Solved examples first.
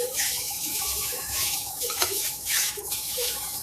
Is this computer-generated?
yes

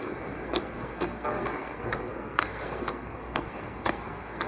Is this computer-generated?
yes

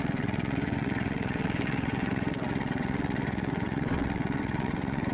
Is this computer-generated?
yes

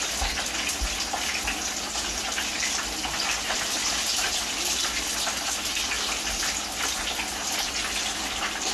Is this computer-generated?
no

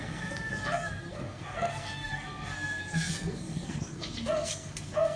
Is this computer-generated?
yes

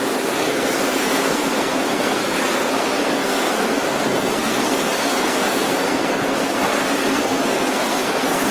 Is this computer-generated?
yes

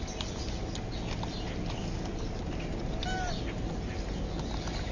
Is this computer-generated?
no